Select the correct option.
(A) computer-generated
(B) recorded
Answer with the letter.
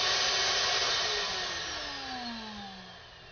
B